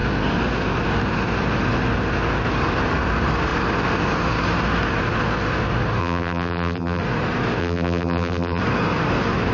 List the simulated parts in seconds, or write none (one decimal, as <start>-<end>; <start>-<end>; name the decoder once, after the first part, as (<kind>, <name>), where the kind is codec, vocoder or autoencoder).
6.0-7.0 (vocoder, BigVGAN v2); 7.6-8.6